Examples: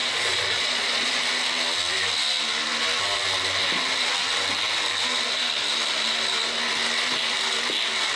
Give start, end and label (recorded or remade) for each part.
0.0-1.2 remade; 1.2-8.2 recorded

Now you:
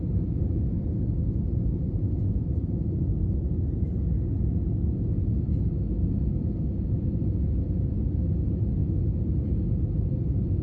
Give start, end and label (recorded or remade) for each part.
0.0-10.6 recorded

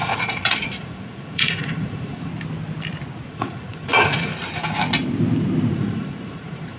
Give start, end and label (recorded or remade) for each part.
0.0-2.3 remade; 2.3-3.3 recorded; 3.3-4.3 remade; 4.3-5.7 recorded; 5.7-6.8 remade

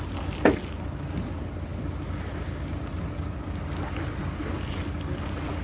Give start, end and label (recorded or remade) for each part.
0.0-5.6 recorded

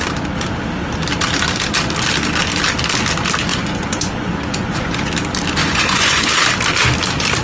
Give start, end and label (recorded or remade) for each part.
0.0-3.5 recorded; 3.5-5.1 remade; 5.1-5.6 recorded; 5.6-6.3 remade; 6.3-7.4 recorded

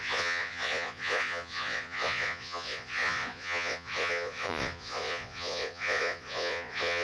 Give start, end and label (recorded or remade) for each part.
0.0-7.0 remade

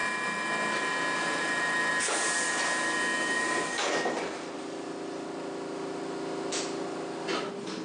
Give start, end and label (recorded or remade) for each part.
0.0-7.8 recorded

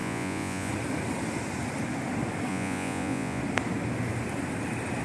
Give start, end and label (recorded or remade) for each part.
0.0-0.7 remade; 0.7-2.5 recorded; 2.5-3.4 remade; 3.4-5.0 recorded